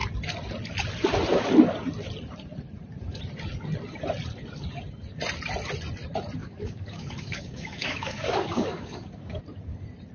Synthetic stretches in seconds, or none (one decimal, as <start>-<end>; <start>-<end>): 6.4-9.4